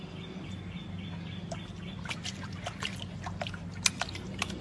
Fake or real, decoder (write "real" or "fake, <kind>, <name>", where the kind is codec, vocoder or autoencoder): real